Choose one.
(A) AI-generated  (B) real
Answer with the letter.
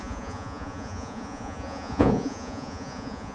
A